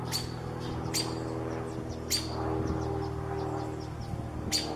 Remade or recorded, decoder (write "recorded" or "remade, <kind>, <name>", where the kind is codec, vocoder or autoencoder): recorded